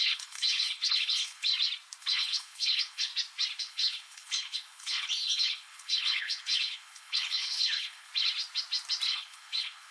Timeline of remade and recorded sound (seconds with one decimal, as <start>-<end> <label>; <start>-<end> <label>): 0.0-1.5 remade; 1.5-2.0 recorded; 2.0-3.1 remade; 3.1-3.6 recorded; 3.6-8.1 remade; 8.1-9.1 recorded; 9.1-9.9 remade

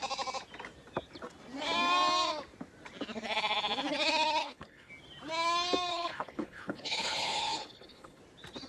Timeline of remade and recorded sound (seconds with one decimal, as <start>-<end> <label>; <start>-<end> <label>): 0.0-4.4 recorded; 4.4-4.9 remade; 4.9-5.9 recorded; 5.9-8.2 remade; 8.2-8.7 recorded

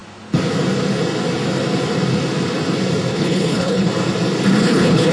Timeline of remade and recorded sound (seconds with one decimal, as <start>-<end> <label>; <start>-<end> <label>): 0.0-3.1 recorded; 3.1-3.9 remade; 3.9-4.6 recorded; 4.6-5.1 remade